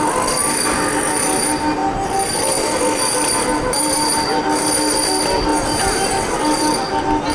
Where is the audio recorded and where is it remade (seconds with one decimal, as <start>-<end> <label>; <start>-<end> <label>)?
0.0-7.3 recorded